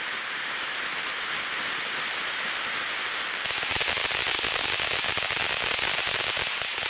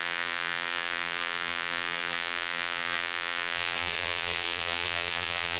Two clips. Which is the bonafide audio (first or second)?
first